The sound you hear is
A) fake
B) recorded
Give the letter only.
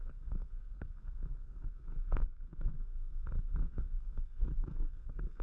A